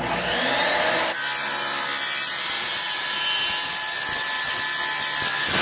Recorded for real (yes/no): yes